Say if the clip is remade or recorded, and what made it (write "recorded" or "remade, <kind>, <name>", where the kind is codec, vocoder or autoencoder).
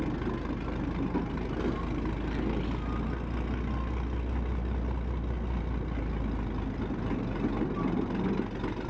recorded